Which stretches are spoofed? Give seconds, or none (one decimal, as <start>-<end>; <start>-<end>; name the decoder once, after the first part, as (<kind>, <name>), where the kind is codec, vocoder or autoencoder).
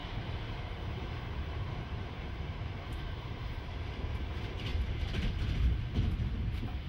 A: 0.0-3.6 (vocoder, BigVGAN v2)